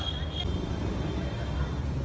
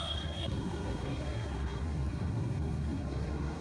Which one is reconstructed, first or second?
second